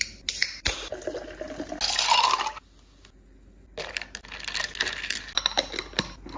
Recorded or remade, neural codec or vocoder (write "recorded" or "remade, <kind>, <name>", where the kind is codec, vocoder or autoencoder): recorded